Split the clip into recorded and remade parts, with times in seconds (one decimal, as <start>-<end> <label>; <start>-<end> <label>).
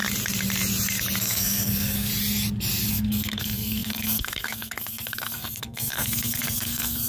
0.0-1.2 recorded; 1.2-2.1 remade; 2.1-2.9 recorded; 2.9-7.1 remade